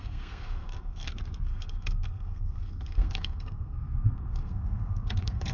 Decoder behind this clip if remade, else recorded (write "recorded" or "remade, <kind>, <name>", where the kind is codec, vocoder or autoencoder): remade, codec, SNAC